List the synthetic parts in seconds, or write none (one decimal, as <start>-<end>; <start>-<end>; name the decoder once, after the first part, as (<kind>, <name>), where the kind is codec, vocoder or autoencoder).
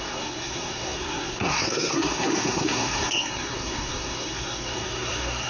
0.0-5.5 (codec, SNAC)